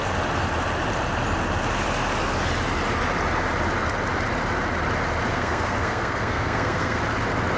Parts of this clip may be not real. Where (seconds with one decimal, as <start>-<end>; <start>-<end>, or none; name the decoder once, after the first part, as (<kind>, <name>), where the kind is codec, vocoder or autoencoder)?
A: 5.3-7.0 (codec, SNAC)